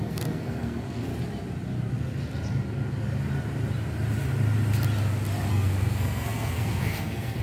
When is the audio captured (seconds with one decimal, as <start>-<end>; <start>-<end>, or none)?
1.1-5.5